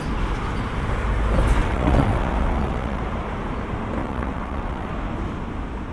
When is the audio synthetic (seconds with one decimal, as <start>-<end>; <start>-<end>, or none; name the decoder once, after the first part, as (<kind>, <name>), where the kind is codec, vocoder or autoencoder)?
1.6-3.0 (vocoder, WaveNeXt); 4.0-4.9